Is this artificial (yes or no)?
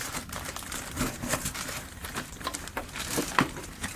yes